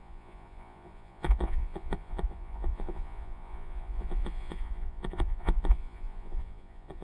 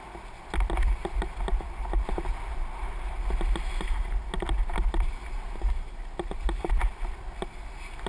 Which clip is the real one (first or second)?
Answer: second